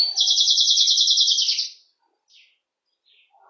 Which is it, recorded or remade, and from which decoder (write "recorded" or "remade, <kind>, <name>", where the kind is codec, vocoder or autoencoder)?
recorded